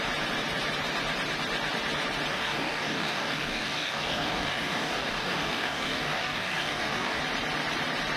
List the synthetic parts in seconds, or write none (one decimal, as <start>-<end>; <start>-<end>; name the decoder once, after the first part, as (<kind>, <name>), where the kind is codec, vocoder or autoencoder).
2.3-7.2 (codec, DAC)